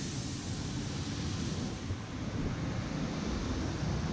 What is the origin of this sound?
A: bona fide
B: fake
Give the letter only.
A